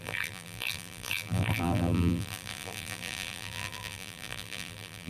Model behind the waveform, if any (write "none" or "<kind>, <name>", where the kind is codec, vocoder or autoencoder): vocoder, BigVGAN v2